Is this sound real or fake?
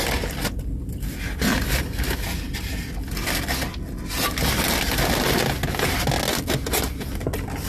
real